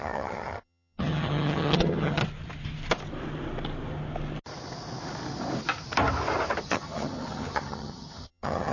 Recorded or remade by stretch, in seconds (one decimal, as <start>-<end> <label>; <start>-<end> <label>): 0.0-2.2 remade; 2.2-6.6 recorded; 6.6-8.7 remade